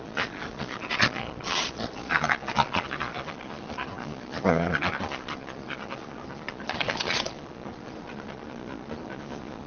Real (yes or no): no